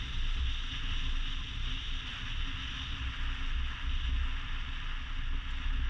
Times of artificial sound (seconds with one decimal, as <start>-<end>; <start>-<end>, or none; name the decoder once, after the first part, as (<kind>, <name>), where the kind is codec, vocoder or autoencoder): none